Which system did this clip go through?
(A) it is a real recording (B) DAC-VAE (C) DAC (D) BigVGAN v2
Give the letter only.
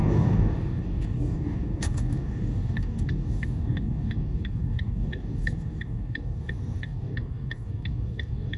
C